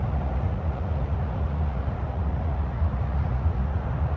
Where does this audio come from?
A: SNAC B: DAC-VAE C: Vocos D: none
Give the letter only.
C